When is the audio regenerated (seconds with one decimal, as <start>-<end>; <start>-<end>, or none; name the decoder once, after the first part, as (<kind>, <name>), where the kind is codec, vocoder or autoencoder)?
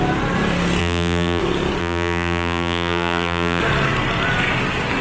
0.8-1.4 (vocoder, BigVGAN v2); 1.8-3.6